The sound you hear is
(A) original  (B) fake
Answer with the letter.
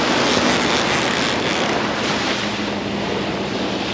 A